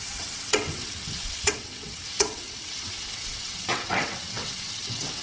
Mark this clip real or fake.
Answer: fake